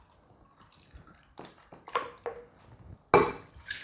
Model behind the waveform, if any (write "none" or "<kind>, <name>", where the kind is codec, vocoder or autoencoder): none